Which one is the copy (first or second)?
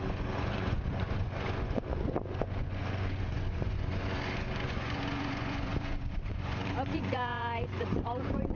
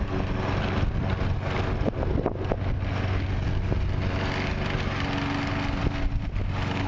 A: first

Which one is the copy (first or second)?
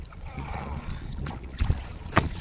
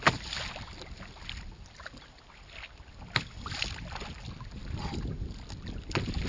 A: first